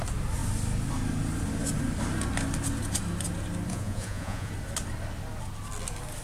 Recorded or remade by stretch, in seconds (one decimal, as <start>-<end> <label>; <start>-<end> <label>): 0.0-3.7 recorded; 3.7-4.5 remade; 4.5-6.2 recorded